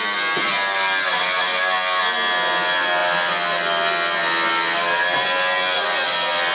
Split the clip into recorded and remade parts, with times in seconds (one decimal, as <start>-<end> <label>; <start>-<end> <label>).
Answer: 0.0-6.5 recorded